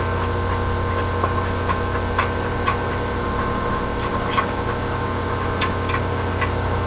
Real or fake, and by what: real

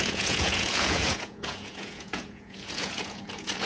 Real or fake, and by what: fake, vocoder, Vocos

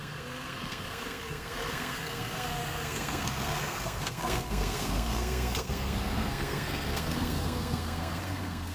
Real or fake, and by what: fake, codec, SNAC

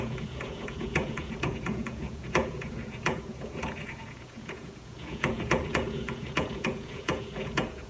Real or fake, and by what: fake, vocoder, Vocos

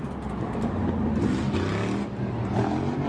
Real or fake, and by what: real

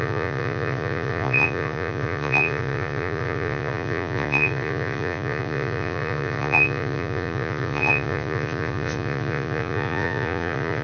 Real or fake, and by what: fake, vocoder, Vocos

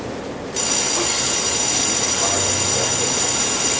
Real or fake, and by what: real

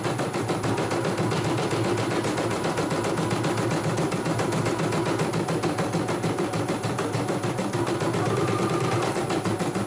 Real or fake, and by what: real